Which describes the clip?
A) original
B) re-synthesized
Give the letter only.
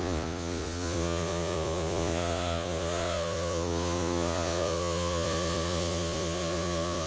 B